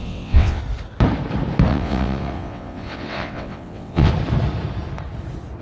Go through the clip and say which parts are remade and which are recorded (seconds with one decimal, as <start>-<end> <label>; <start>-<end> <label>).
0.0-0.6 remade; 0.6-1.7 recorded; 1.7-4.1 remade; 4.1-5.6 recorded